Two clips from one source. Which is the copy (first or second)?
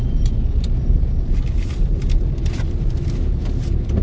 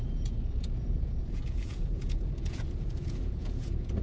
second